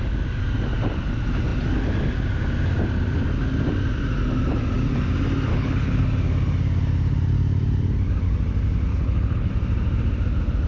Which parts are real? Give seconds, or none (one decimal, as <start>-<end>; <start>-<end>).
0.0-5.5; 6.0-8.9; 9.5-10.7